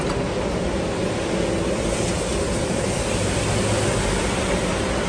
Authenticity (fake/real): real